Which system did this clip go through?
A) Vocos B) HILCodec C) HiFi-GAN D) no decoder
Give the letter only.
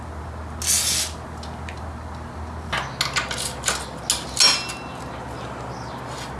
D